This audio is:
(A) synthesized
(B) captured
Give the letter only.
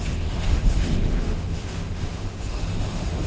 A